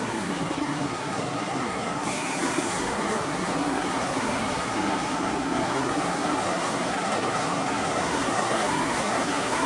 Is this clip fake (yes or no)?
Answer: yes